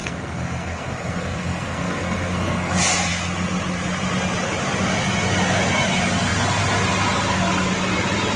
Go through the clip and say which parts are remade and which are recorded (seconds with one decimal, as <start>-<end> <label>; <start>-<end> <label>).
0.0-2.7 remade; 2.7-8.4 recorded